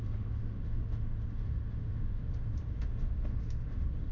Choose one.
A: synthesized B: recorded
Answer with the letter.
A